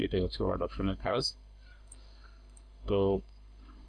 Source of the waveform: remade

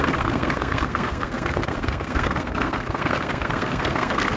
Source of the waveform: remade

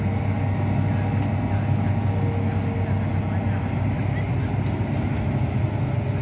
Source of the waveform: recorded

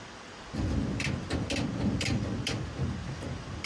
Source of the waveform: recorded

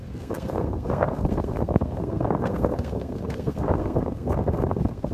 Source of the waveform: remade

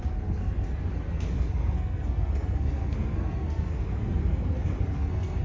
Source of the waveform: remade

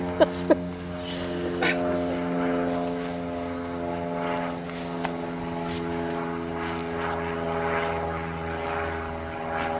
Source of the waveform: recorded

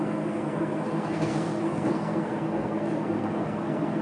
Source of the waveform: remade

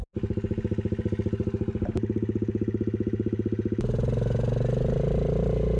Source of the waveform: recorded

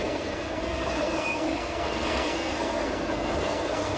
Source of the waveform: remade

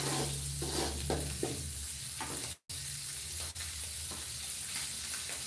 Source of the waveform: recorded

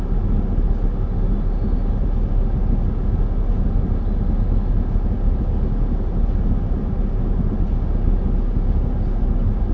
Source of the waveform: recorded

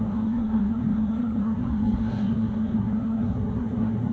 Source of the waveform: remade